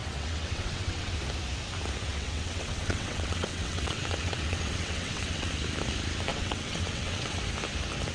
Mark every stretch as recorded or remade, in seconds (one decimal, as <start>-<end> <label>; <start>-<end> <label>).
0.0-1.1 remade; 1.1-2.1 recorded; 2.1-5.5 remade; 5.5-6.3 recorded; 6.3-7.4 remade; 7.4-8.1 recorded